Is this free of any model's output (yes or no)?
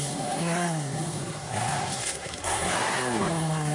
no